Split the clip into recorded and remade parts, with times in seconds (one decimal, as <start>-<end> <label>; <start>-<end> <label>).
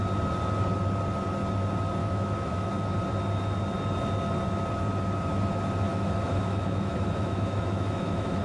0.0-2.0 recorded; 2.0-2.7 remade; 2.7-5.9 recorded; 5.9-8.4 remade